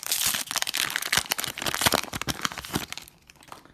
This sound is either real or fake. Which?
fake